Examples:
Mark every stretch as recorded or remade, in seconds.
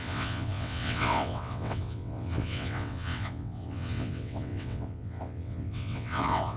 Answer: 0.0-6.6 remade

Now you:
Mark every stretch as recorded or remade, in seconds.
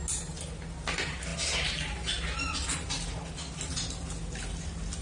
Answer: 0.0-5.0 recorded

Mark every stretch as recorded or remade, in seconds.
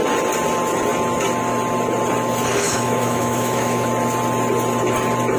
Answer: 0.0-2.5 recorded; 2.5-3.9 remade; 3.9-5.4 recorded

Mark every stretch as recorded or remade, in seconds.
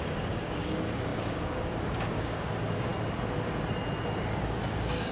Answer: 0.0-2.9 remade; 2.9-4.4 recorded; 4.4-5.1 remade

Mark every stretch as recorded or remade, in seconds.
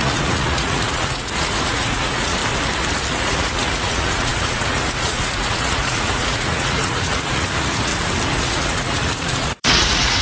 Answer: 0.0-2.4 remade; 2.4-3.1 recorded; 3.1-7.9 remade; 7.9-8.4 recorded; 8.4-10.2 remade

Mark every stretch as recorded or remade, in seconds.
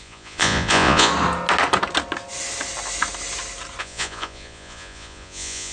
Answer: 0.0-1.1 remade; 1.1-3.8 recorded; 3.8-5.7 remade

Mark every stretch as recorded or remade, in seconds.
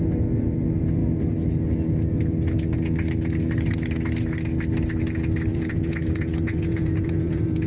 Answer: 0.0-5.5 recorded; 5.5-7.7 remade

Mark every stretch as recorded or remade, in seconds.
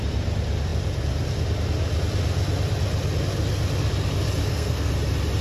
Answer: 0.0-4.4 recorded; 4.4-4.9 remade; 4.9-5.4 recorded